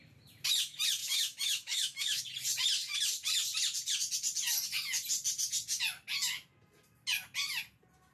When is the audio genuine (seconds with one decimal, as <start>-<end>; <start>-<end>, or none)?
0.0-1.0; 2.2-8.1